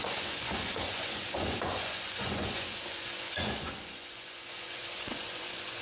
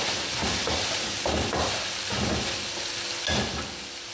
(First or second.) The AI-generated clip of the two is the first